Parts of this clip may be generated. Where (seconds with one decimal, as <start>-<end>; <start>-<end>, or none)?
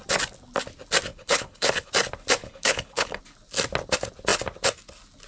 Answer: 1.1-1.9; 2.4-3.2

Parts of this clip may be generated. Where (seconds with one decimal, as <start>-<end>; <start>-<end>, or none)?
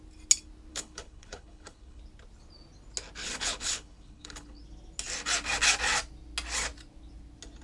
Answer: 0.7-2.0; 3.2-4.6